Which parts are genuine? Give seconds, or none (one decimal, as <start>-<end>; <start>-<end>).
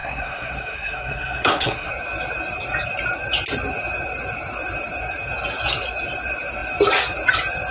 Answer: 1.9-7.7